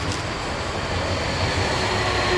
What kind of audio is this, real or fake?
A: real